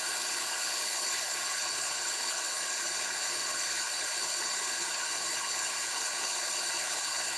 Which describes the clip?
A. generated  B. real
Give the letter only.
A